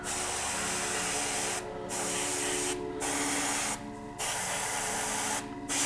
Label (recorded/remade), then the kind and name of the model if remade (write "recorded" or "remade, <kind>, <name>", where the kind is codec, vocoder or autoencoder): recorded